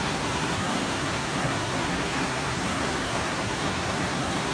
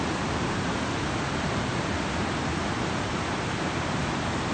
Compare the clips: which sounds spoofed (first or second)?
first